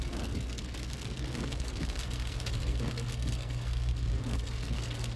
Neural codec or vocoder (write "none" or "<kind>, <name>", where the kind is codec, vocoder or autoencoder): codec, SNAC